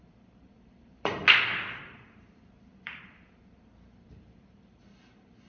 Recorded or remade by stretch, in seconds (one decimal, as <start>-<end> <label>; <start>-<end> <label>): 0.0-1.2 remade; 1.2-1.8 recorded; 1.8-5.5 remade